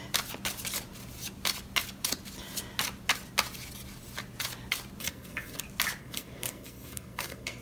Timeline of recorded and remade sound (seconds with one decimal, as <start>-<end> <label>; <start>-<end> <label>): 0.0-5.0 recorded; 5.0-5.6 remade; 5.6-6.0 recorded; 6.0-7.6 remade